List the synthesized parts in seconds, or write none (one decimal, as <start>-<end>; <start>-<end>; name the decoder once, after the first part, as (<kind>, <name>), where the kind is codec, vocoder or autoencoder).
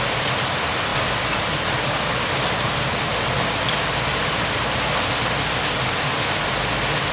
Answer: none